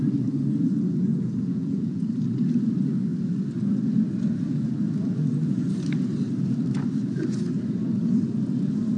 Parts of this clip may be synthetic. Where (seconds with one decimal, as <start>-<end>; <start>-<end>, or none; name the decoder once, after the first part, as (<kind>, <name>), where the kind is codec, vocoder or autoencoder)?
1.1-2.0 (vocoder, Vocos)

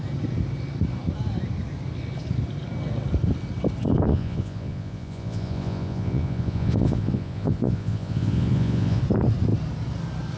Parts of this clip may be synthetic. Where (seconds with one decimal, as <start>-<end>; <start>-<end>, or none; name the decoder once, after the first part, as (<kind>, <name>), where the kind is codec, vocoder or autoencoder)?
4.1-9.0 (vocoder, Vocos)

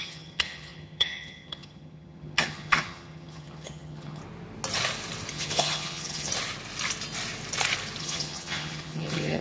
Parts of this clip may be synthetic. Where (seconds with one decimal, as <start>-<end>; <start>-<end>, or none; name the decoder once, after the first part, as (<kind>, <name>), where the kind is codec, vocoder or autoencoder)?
0.0-4.2 (vocoder, HiFi-GAN); 5.3-6.3; 8.0-9.4

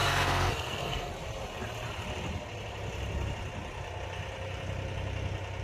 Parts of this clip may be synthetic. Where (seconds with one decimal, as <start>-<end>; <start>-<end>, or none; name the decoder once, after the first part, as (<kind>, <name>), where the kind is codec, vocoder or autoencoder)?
0.0-1.1 (codec, SNAC)

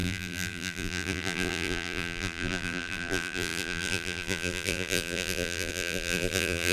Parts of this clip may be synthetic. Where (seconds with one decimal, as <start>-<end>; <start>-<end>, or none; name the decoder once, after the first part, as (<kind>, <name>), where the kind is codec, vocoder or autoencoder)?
0.0-6.7 (vocoder, BigVGAN v2)

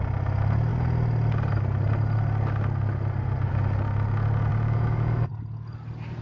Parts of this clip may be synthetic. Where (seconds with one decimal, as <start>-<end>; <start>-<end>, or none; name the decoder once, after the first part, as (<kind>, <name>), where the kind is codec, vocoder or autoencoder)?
4.5-5.3 (autoencoder, DAC-VAE)